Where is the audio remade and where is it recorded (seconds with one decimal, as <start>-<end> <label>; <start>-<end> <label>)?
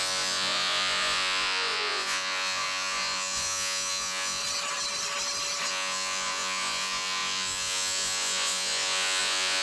0.0-4.4 remade; 4.4-5.7 recorded; 5.7-9.6 remade